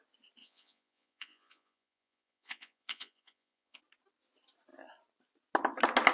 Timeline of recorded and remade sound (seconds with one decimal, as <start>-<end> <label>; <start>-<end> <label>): 0.0-0.4 recorded; 0.4-3.8 remade; 3.8-6.1 recorded